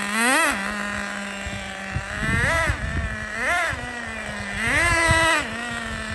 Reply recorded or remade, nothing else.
recorded